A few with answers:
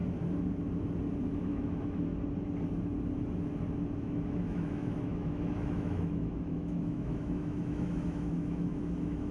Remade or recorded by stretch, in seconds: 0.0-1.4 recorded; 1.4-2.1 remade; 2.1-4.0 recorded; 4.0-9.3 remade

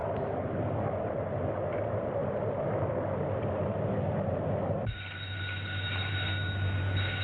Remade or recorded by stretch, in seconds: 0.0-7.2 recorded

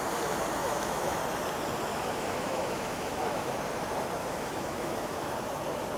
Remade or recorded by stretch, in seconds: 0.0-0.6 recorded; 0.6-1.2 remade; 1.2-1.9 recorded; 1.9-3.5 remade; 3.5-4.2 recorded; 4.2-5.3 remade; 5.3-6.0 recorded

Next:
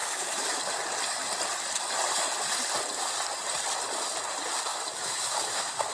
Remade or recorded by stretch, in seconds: 0.0-0.6 remade; 0.6-4.7 recorded; 4.7-5.9 remade

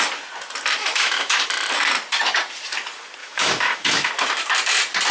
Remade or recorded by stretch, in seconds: 0.0-0.8 recorded; 0.8-1.4 remade; 1.4-3.2 recorded; 3.2-4.1 remade; 4.1-5.1 recorded